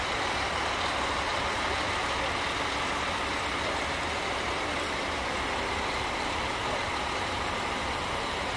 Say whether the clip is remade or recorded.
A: recorded